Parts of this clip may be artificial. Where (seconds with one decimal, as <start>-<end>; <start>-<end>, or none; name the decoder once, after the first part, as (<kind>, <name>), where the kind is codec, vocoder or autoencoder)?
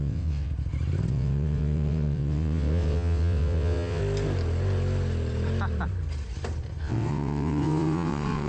0.0-0.5 (vocoder, WaveNeXt); 1.1-4.0; 6.8-8.5